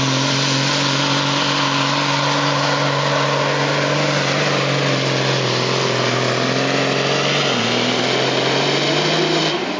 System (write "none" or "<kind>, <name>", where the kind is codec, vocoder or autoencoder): none